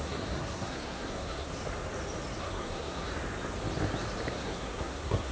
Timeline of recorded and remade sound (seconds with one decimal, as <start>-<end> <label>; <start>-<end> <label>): 0.0-1.5 remade; 1.5-2.4 recorded; 2.4-3.1 remade; 3.1-4.3 recorded; 4.3-5.3 remade